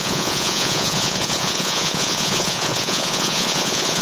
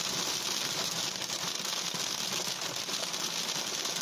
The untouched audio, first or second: second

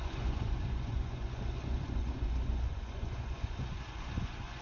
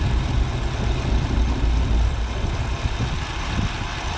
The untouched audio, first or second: second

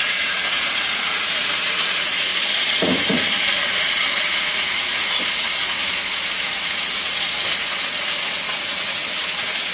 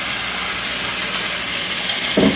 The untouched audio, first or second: second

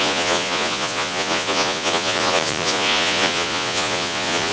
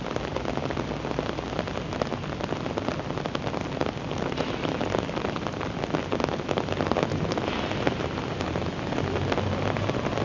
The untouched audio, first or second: second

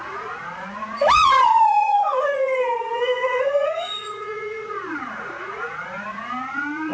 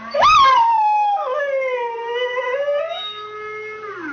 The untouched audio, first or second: second